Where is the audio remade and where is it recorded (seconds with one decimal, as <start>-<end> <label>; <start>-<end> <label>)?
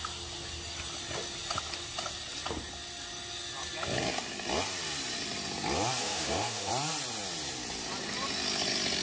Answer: 0.0-6.0 recorded; 6.0-6.7 remade; 6.7-9.0 recorded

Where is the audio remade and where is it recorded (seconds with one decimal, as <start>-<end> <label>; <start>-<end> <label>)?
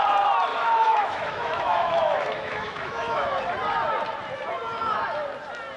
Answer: 0.0-0.5 recorded; 0.5-3.4 remade; 3.4-5.8 recorded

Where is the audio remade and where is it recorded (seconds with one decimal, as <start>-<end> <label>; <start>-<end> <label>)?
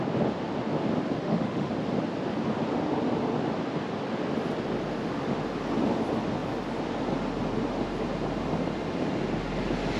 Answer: 0.0-1.2 recorded; 1.2-1.7 remade; 1.7-10.0 recorded